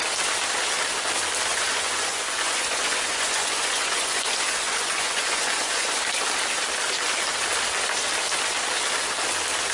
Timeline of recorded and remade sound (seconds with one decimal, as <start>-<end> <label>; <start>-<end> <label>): 0.0-1.5 recorded; 1.5-6.0 remade; 6.0-9.7 recorded